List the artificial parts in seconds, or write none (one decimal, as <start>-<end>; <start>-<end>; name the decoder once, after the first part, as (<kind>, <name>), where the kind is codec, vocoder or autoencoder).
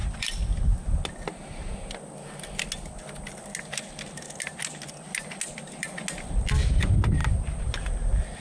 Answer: none